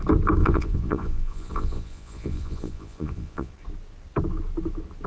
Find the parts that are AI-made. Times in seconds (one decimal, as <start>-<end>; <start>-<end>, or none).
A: 0.4-3.5